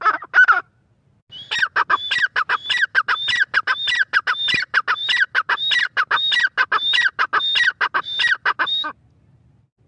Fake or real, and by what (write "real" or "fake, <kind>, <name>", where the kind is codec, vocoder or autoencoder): real